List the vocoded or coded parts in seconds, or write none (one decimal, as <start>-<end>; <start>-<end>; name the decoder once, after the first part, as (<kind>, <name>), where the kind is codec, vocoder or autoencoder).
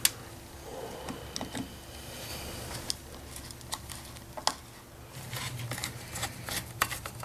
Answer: 0.7-1.2 (vocoder, BigVGAN v2); 2.3-2.9; 5.8-7.2